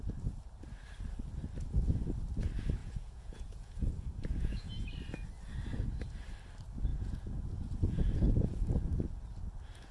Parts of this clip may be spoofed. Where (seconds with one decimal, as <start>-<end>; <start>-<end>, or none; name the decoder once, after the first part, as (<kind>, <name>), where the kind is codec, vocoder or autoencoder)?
2.8-4.9 (vocoder, Vocos); 6.9-8.7